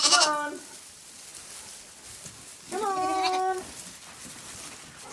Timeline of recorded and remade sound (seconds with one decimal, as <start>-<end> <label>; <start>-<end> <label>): 0.0-5.1 recorded